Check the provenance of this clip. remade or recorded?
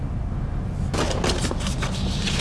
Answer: recorded